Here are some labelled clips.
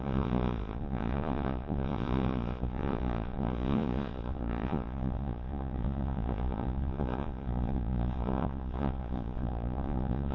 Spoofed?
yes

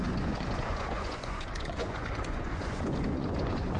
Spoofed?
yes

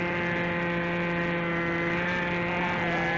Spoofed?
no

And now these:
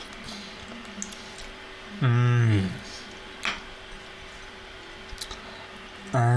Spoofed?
no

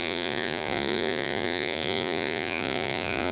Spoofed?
yes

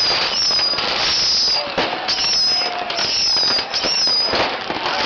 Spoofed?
no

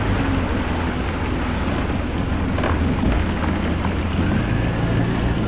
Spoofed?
no